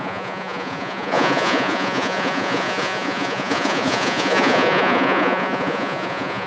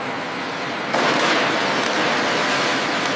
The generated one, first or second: first